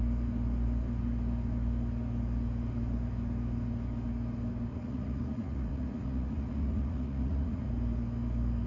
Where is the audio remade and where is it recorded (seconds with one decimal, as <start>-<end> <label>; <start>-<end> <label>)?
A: 0.0-4.7 recorded; 4.7-7.7 remade; 7.7-8.7 recorded